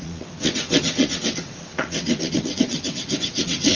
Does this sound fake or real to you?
fake